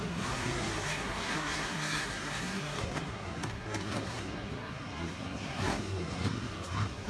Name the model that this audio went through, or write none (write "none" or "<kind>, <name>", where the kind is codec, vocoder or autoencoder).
codec, SNAC